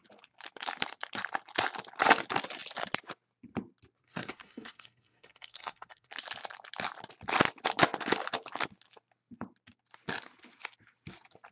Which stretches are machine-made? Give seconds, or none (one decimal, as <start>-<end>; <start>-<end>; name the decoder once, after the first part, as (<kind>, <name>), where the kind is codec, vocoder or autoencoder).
4.0-6.1 (codec, SNAC)

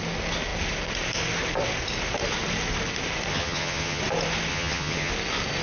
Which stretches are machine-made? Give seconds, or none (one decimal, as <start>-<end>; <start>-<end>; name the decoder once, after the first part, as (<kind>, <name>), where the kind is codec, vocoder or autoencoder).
3.3-4.0 (vocoder, HiFi-GAN); 4.5-5.1

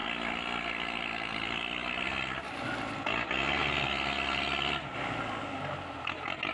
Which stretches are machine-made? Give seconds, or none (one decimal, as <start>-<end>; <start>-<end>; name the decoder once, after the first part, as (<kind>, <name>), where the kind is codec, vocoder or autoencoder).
none

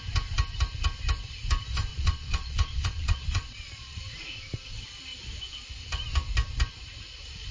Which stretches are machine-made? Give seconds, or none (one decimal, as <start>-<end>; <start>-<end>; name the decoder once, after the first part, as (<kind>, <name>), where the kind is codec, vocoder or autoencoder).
1.9-4.0 (vocoder, Vocos)